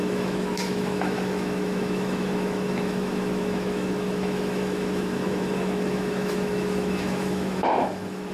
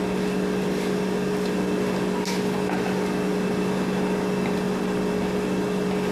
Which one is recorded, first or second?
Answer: second